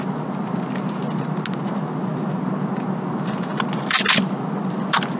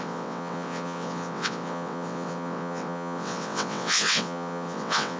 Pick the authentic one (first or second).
first